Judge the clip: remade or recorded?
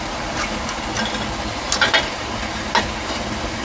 recorded